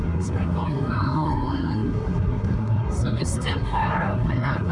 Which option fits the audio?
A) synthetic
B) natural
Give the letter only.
A